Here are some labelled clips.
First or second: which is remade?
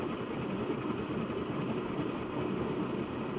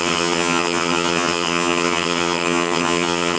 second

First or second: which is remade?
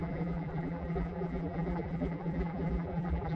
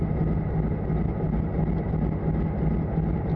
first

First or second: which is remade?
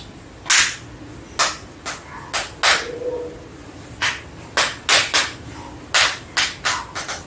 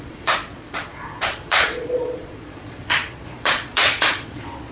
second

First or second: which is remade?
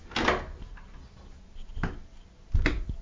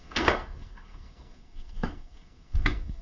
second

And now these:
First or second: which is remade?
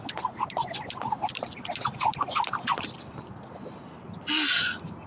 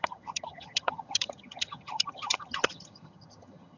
second